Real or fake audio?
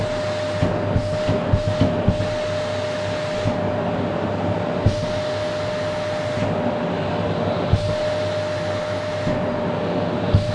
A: real